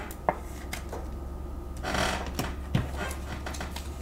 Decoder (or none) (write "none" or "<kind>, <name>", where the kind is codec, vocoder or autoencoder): none